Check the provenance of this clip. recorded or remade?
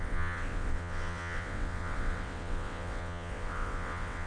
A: remade